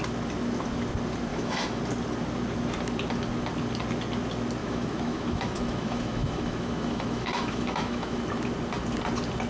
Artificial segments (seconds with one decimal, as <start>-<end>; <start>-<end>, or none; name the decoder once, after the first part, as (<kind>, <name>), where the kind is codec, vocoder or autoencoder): 1.3-1.8 (autoencoder, DAC-VAE); 4.6-8.2